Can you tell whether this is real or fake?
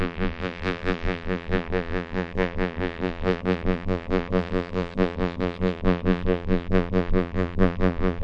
fake